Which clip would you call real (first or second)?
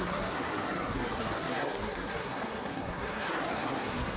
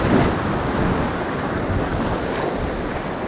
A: second